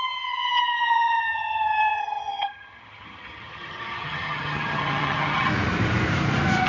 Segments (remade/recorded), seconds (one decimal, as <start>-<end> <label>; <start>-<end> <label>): 0.0-5.5 remade; 5.5-6.7 recorded